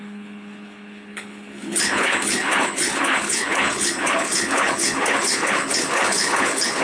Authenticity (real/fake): fake